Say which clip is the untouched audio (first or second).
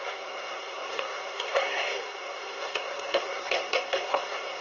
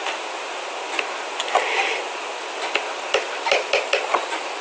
second